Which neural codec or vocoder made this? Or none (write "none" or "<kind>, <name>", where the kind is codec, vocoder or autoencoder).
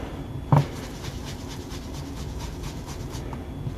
none